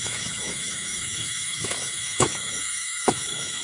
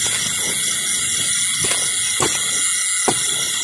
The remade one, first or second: first